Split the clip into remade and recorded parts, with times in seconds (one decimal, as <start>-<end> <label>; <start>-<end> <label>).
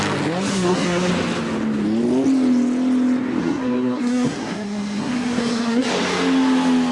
0.0-0.5 recorded; 0.5-1.1 remade; 1.1-3.4 recorded; 3.4-5.9 remade; 5.9-6.9 recorded